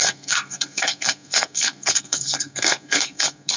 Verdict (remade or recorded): remade